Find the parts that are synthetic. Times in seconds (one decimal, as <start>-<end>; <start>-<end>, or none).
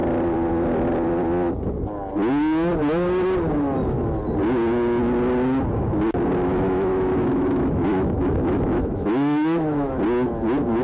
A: 6.5-10.0